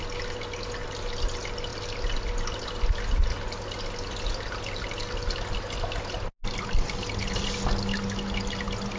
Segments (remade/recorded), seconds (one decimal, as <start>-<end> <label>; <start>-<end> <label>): 0.0-9.0 recorded